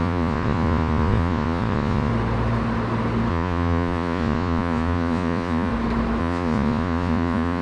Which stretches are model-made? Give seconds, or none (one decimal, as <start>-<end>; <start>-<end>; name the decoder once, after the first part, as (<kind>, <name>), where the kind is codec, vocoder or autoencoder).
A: 0.0-2.1 (vocoder, Vocos); 3.3-5.7; 6.2-7.6